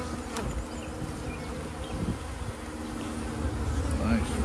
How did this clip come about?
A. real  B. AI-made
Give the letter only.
A